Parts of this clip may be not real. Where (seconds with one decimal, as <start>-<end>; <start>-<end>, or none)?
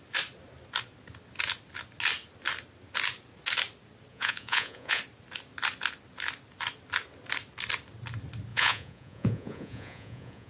4.1-5.0; 8.5-10.5